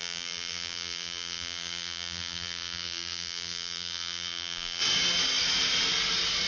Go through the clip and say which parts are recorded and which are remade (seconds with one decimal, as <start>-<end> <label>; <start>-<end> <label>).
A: 0.0-4.8 remade; 4.8-6.5 recorded